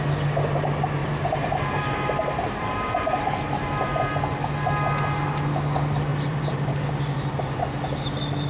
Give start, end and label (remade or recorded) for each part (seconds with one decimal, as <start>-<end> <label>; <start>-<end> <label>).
0.0-1.0 recorded; 1.0-4.2 remade; 4.2-6.1 recorded; 6.1-6.7 remade; 6.7-8.5 recorded